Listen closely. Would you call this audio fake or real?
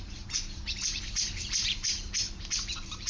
fake